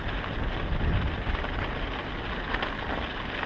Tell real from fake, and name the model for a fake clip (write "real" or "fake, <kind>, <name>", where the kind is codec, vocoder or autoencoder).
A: real